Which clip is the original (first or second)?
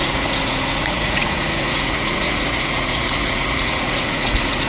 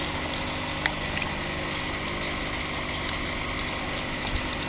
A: second